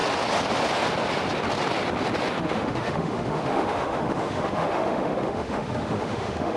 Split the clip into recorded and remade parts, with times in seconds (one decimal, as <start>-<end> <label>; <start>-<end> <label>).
0.0-2.4 recorded; 2.4-6.6 remade